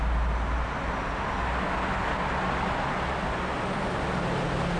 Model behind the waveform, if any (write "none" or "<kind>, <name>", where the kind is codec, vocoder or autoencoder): none